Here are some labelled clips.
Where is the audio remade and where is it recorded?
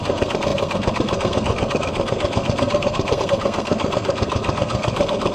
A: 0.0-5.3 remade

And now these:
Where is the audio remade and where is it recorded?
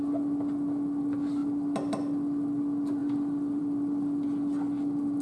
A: 0.0-5.2 recorded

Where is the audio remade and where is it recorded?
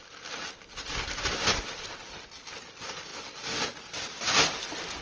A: 0.0-5.0 recorded